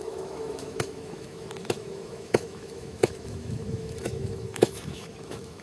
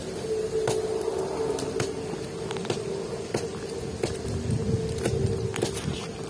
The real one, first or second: second